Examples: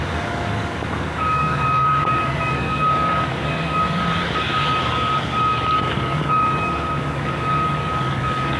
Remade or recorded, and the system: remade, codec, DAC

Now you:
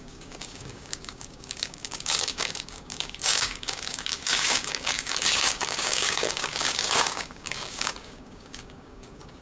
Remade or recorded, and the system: remade, codec, DAC